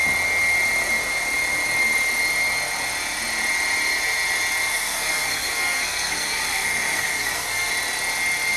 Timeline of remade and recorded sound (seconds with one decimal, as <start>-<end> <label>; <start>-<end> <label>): 0.0-4.6 recorded; 4.6-7.7 remade; 7.7-8.6 recorded